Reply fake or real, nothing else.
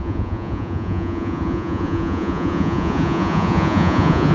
fake